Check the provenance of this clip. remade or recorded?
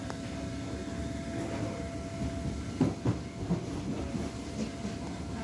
recorded